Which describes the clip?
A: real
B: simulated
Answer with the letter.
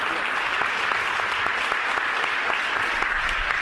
A